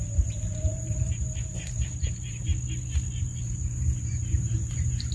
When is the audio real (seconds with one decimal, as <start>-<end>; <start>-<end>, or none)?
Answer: 2.5-3.2